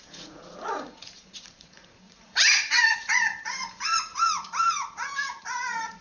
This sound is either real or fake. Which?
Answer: fake